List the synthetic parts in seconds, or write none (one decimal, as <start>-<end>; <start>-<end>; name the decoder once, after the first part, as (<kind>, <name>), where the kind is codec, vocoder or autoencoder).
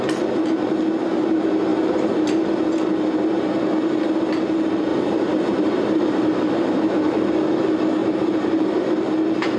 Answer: 1.7-2.3 (vocoder, BigVGAN v2); 4.9-7.3; 8.0-8.8